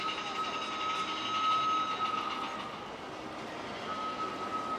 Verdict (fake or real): real